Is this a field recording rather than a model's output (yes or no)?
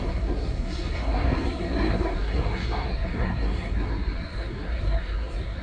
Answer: no